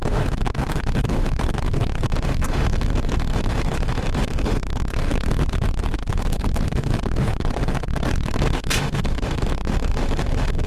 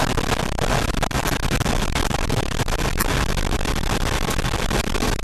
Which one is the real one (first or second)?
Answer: second